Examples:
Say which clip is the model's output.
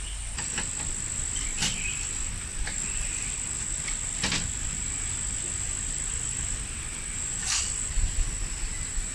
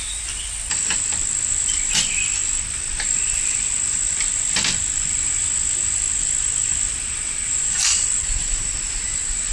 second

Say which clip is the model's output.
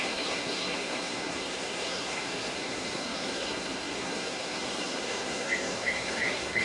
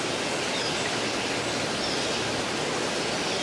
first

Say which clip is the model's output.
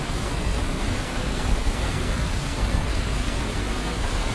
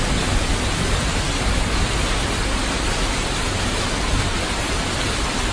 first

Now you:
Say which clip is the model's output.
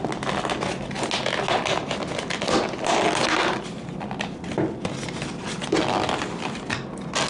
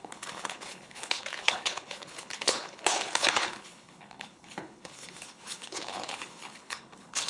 second